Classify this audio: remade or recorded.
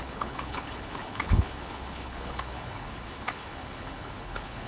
remade